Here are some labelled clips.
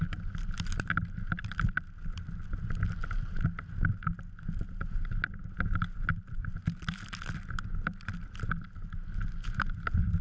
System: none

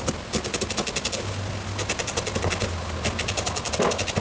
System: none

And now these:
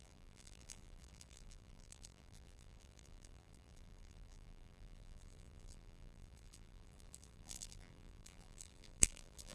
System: vocoder, BigVGAN v2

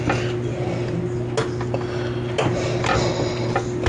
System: none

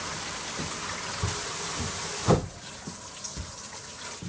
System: none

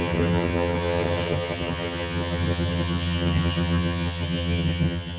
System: vocoder, HiFi-GAN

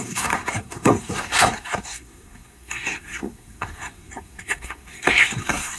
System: codec, SNAC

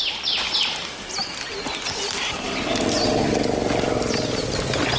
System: none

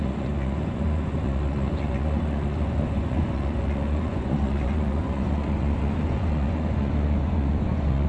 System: vocoder, Vocos